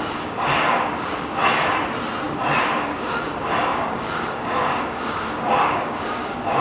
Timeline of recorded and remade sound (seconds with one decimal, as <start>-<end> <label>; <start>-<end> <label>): 0.0-1.4 remade; 1.4-2.6 recorded; 2.6-6.6 remade